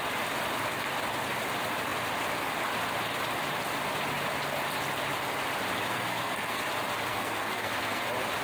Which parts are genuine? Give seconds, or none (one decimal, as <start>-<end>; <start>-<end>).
0.0-5.9; 6.6-7.1; 8.0-8.4